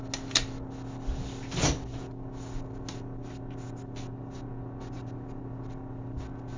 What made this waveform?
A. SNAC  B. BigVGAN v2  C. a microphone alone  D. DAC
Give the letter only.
C